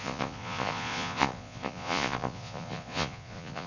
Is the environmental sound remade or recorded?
remade